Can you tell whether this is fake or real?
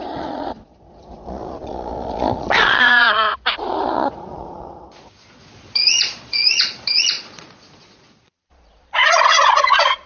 fake